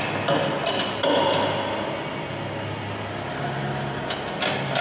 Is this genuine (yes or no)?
yes